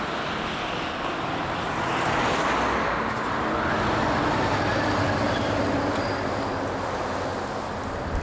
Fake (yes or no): no